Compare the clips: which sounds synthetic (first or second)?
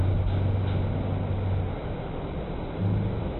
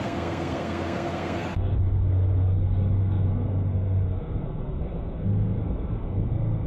second